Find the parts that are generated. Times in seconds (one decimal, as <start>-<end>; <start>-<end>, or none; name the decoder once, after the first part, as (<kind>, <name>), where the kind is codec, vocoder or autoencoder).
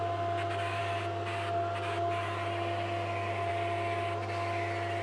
none